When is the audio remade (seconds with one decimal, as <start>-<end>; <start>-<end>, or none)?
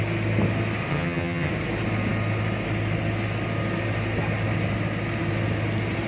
0.9-1.5